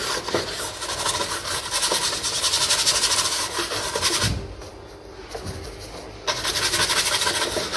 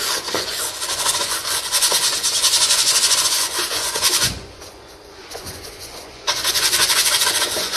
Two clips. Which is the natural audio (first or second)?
first